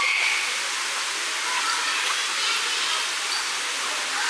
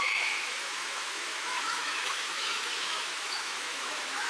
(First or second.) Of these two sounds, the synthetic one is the second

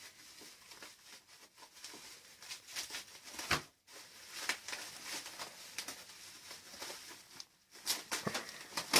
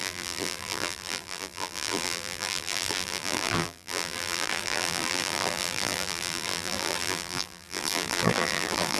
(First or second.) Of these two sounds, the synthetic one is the second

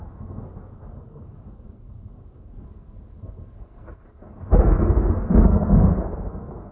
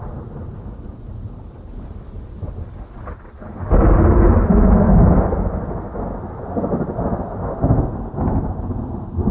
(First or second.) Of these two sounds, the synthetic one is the first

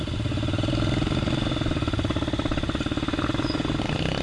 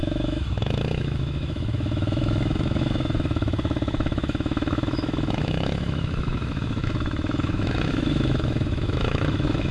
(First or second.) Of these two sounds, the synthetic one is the second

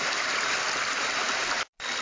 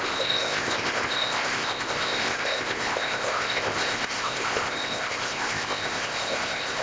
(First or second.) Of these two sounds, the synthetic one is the second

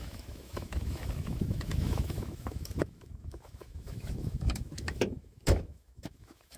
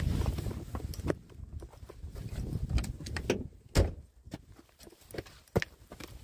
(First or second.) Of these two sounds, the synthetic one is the first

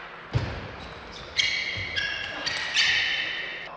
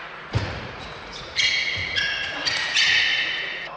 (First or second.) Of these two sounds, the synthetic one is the second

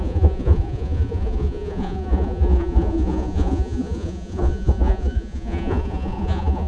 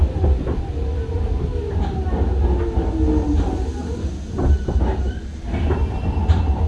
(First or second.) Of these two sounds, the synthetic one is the first